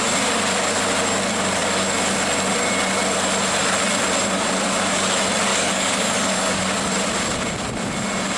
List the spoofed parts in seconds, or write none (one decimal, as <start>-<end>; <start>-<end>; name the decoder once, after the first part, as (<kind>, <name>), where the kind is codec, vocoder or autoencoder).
5.5-6.6 (codec, DAC)